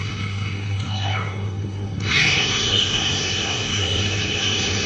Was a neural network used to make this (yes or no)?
yes